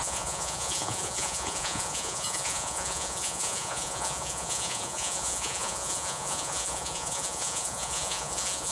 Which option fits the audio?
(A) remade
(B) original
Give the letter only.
A